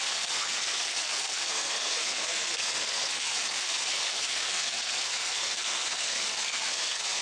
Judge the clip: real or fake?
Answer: fake